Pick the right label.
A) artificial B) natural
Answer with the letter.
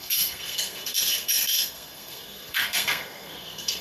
A